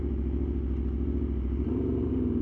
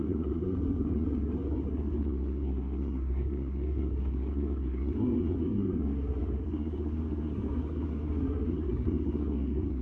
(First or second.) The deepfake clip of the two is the second